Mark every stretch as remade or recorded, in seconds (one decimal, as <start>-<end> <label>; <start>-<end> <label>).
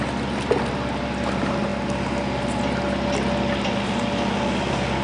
0.0-5.0 recorded